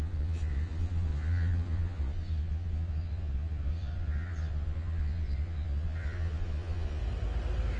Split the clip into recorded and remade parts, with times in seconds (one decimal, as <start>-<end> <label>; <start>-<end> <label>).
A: 0.0-7.0 remade; 7.0-7.8 recorded